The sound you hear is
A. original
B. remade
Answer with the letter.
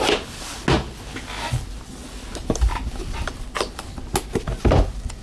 A